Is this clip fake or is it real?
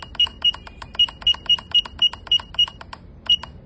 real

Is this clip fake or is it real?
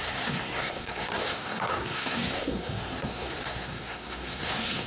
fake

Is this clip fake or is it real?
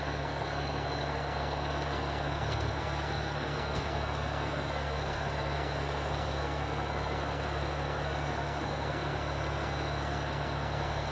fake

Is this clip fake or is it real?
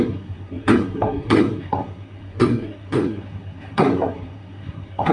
fake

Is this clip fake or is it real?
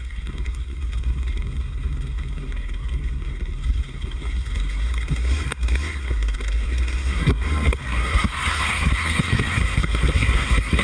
fake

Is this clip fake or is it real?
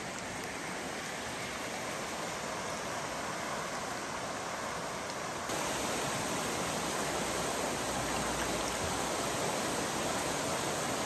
real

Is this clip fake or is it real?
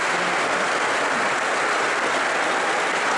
real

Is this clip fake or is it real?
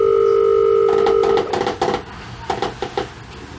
real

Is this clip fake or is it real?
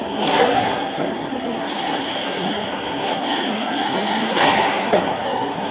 fake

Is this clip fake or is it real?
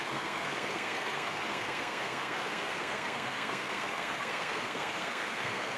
fake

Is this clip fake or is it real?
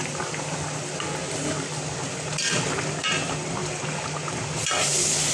real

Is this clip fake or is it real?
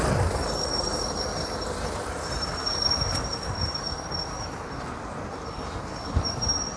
real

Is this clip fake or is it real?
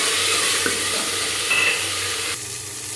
real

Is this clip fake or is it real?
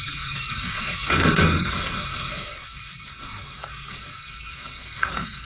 fake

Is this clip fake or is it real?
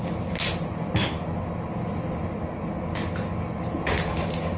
real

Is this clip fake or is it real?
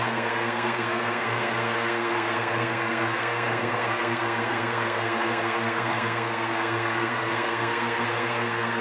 fake